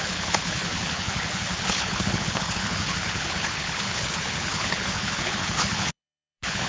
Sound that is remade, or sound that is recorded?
remade